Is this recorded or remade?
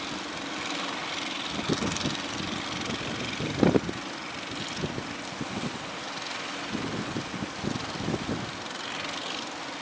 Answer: recorded